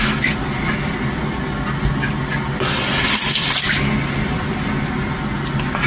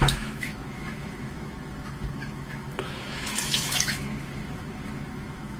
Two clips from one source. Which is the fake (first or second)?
second